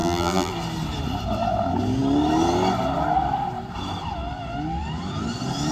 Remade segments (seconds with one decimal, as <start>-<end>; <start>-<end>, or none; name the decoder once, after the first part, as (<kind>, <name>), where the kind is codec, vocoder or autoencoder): 0.0-0.5 (vocoder, BigVGAN v2)